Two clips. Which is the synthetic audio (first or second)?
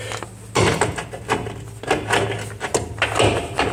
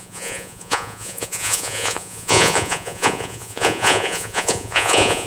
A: second